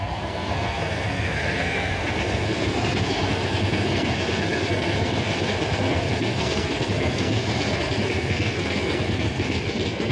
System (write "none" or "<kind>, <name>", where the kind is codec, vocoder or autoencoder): codec, SNAC